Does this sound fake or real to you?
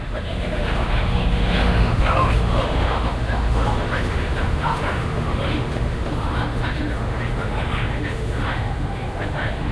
fake